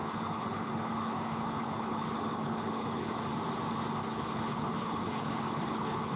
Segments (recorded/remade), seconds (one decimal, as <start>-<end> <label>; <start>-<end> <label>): 0.0-3.2 remade; 3.2-4.0 recorded; 4.0-6.2 remade